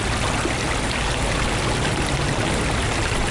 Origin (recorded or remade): recorded